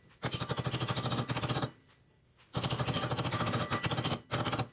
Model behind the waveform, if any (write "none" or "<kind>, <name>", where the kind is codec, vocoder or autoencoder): none